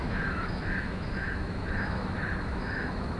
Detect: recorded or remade remade